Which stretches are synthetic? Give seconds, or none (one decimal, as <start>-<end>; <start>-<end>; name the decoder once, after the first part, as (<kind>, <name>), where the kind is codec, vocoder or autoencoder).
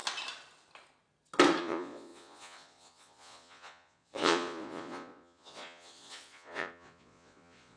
1.6-7.8 (vocoder, Vocos)